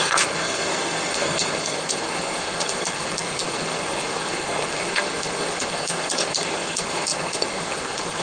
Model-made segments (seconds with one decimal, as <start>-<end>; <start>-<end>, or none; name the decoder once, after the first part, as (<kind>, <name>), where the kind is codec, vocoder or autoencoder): 0.0-8.2 (codec, SNAC)